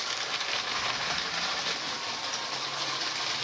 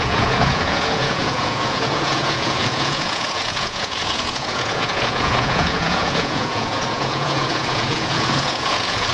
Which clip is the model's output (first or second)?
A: second